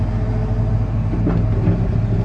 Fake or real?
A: real